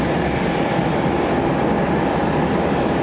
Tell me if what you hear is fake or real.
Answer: real